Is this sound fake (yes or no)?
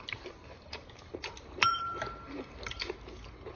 yes